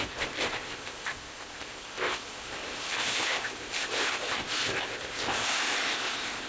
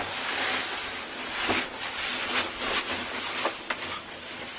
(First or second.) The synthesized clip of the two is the first